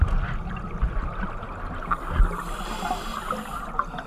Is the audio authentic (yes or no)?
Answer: yes